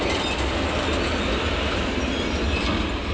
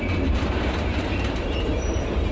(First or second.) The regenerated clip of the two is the second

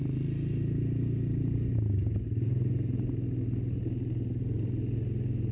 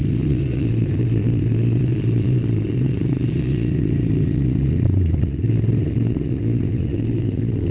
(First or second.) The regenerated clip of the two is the second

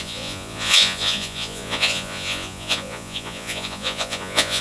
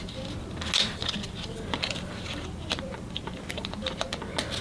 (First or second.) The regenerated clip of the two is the first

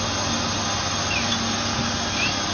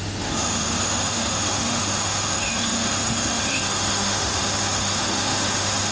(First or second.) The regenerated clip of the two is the second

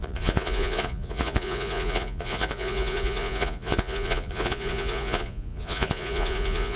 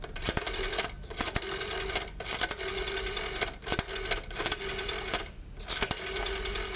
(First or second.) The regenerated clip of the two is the first